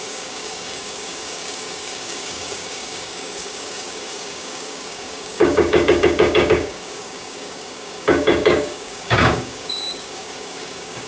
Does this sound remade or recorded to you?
remade